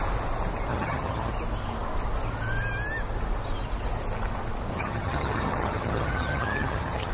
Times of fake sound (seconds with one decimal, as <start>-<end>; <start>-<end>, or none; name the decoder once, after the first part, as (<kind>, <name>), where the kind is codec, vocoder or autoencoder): 0.7-1.3 (vocoder, HiFi-GAN); 4.7-7.1